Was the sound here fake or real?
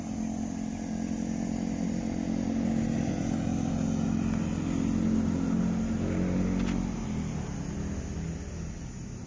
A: real